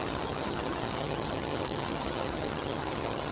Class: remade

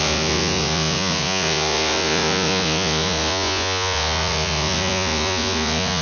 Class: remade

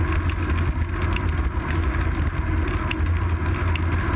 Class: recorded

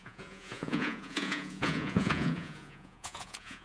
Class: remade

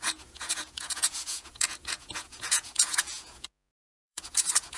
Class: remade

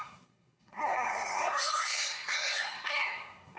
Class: remade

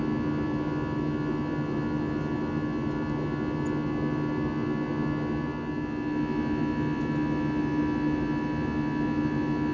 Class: recorded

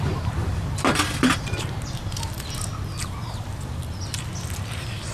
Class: recorded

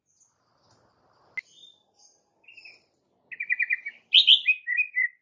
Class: recorded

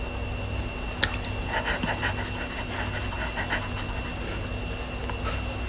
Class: recorded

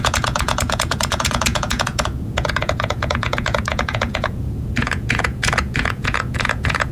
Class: remade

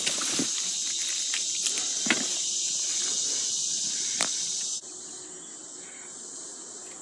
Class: recorded